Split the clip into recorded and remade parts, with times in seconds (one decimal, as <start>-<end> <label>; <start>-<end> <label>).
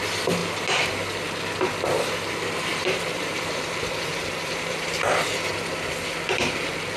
0.0-2.7 recorded; 2.7-5.5 remade; 5.5-7.0 recorded